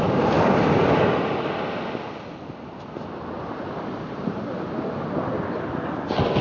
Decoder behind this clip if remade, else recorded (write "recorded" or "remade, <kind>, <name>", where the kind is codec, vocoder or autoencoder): recorded